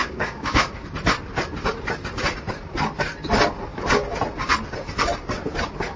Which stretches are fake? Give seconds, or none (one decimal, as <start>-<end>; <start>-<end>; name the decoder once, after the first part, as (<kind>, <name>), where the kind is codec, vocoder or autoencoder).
0.0-0.7 (codec, DAC)